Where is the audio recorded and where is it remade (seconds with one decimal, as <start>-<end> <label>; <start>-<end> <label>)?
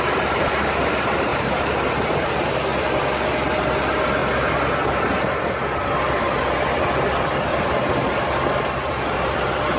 0.0-1.3 recorded; 1.3-1.9 remade; 1.9-7.5 recorded; 7.5-8.6 remade; 8.6-9.8 recorded